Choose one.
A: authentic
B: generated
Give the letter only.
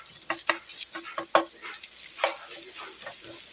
A